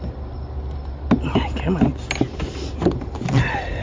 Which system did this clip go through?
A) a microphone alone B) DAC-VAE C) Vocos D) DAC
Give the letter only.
A